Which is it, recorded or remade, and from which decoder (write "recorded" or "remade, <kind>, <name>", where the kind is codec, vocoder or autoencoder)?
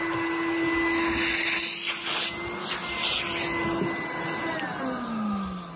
recorded